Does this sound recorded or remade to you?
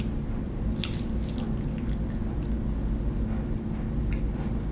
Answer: recorded